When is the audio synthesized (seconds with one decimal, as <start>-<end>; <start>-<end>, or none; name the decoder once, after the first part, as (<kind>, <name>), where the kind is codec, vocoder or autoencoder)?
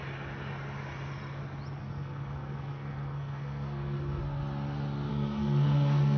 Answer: 1.8-4.2 (codec, SNAC); 5.1-6.2